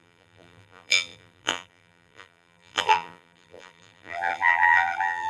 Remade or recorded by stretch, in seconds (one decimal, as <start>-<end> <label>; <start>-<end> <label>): 0.0-5.3 remade